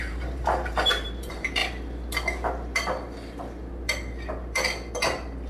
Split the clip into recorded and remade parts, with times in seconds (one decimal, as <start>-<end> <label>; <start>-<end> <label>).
0.0-1.6 remade; 1.6-4.9 recorded; 4.9-5.5 remade